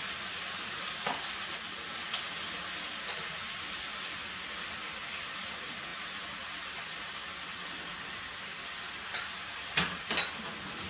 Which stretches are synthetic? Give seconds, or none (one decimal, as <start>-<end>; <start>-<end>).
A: none